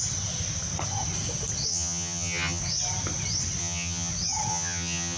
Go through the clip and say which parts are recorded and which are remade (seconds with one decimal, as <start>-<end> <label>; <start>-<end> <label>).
0.0-1.7 recorded; 1.7-2.6 remade; 2.6-3.6 recorded; 3.6-4.1 remade; 4.1-4.5 recorded; 4.5-5.2 remade